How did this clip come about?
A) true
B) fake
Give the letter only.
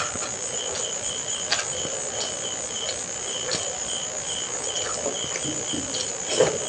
A